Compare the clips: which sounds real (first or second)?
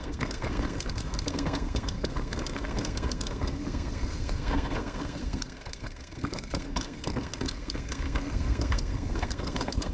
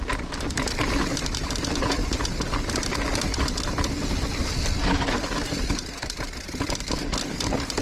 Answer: second